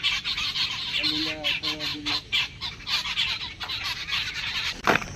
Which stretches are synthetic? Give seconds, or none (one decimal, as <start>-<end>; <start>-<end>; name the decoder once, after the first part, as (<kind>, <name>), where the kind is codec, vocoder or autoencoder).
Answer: 1.9-2.4 (vocoder, BigVGAN v2); 4.4-5.2